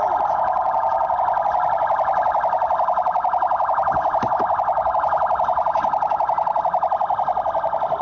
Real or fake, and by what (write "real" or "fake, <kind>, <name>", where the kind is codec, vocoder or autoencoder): real